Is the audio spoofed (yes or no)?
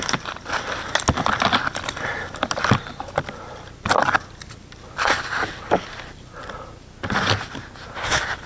no